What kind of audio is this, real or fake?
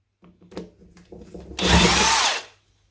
real